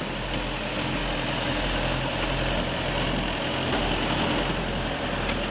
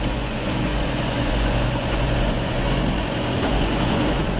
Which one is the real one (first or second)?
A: first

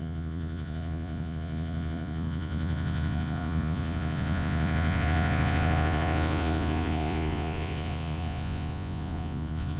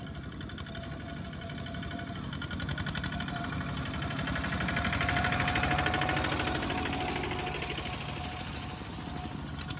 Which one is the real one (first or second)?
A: second